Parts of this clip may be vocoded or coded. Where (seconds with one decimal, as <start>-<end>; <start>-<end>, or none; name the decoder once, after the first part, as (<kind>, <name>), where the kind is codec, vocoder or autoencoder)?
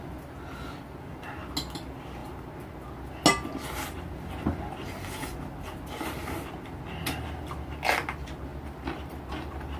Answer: 8.5-9.8 (vocoder, BigVGAN v2)